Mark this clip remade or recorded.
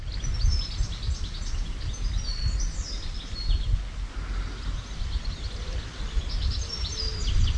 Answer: recorded